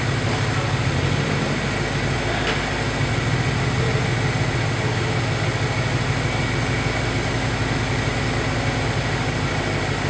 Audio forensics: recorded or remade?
recorded